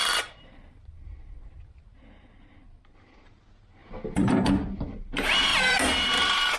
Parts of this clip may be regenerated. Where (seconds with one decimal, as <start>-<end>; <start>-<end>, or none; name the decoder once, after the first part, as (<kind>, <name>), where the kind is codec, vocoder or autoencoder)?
0.0-3.4 (vocoder, BigVGAN v2); 3.8-4.5; 5.5-6.6